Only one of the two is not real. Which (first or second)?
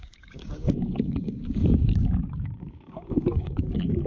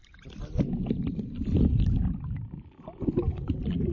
first